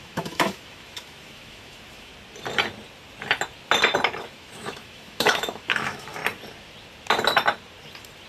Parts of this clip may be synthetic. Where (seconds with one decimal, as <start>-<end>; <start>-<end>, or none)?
0.0-2.1; 4.2-6.2